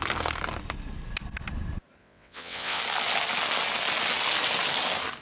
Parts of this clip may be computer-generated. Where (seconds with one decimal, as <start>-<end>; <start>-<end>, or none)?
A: 2.0-2.8